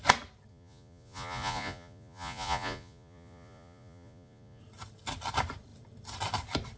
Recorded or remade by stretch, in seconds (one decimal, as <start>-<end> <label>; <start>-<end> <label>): 0.0-0.5 recorded; 0.5-4.6 remade; 4.6-6.8 recorded

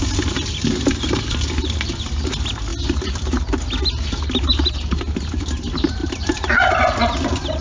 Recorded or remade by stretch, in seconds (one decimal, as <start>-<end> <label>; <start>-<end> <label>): 0.0-7.6 recorded

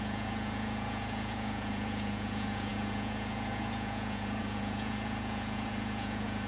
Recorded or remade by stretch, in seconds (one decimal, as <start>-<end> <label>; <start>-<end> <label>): 0.0-6.5 remade

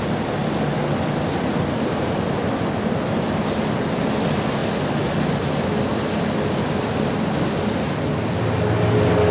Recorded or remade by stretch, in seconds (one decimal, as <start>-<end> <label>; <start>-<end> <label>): 0.0-9.3 recorded

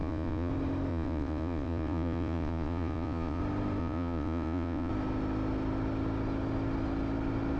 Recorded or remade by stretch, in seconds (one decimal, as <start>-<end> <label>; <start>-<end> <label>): 0.0-0.5 remade; 0.5-0.9 recorded; 0.9-3.4 remade; 3.4-3.8 recorded; 3.8-4.9 remade; 4.9-7.6 recorded

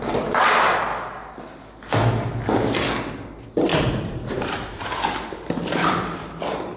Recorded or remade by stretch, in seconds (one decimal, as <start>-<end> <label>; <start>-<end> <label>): 0.0-3.7 recorded; 3.7-4.9 remade; 4.9-6.8 recorded

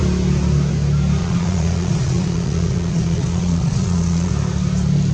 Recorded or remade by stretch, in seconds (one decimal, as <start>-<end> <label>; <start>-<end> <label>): 0.0-1.2 recorded; 1.2-4.3 remade; 4.3-5.1 recorded

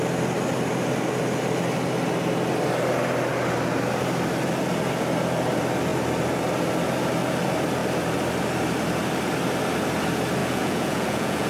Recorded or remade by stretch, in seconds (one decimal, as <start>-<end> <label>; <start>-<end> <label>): 0.0-10.4 recorded; 10.4-11.5 remade